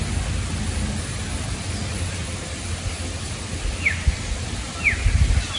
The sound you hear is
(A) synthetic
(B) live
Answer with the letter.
B